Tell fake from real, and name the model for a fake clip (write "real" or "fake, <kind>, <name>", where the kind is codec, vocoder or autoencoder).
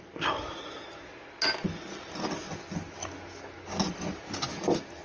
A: real